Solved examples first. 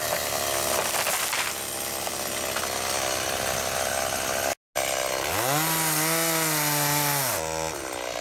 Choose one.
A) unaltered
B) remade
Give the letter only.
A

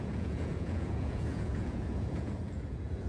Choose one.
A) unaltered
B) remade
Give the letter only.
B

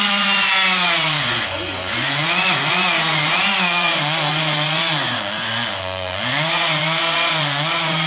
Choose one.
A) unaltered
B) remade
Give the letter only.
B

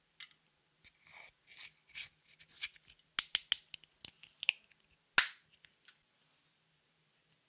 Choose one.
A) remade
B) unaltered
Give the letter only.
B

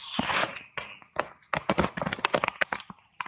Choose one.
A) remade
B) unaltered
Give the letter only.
B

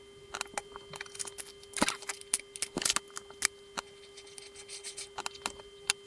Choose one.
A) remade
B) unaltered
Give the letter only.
B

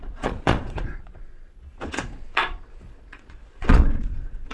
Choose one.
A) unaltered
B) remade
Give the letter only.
B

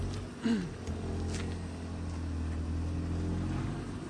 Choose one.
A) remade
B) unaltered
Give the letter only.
B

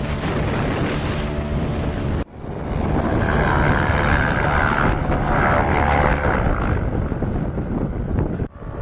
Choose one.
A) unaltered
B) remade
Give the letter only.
A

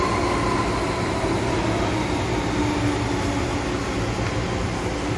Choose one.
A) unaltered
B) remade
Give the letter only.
A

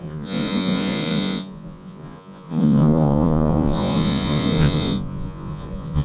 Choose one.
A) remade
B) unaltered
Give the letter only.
A